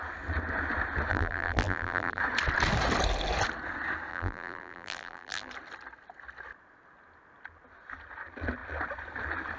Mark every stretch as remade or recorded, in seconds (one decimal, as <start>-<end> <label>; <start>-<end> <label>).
0.0-1.1 recorded; 1.1-2.2 remade; 2.2-4.1 recorded; 4.1-5.5 remade; 5.5-9.6 recorded